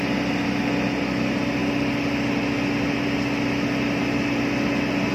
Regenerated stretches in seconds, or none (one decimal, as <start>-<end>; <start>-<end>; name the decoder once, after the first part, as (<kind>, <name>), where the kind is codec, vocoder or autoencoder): none